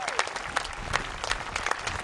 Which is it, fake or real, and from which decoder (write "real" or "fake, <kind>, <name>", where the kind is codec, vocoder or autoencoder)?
real